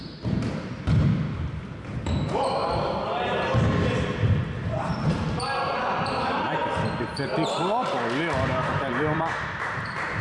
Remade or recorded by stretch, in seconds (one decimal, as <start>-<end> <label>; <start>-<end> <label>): 0.0-2.6 remade; 2.6-6.0 recorded; 6.0-6.6 remade; 6.6-8.7 recorded; 8.7-10.2 remade